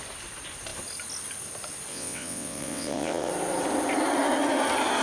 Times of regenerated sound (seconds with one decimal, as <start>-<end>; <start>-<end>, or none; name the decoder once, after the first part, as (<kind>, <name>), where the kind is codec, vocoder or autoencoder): 1.9-3.3 (vocoder, WaveNeXt)